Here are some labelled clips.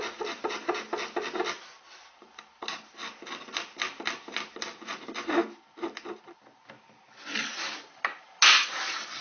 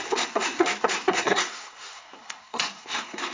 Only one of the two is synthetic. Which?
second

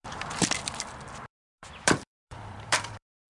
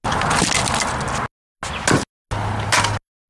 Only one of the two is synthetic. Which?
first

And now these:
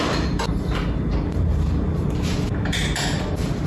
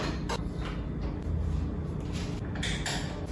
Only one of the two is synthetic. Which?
first